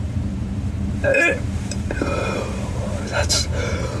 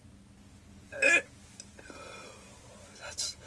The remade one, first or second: first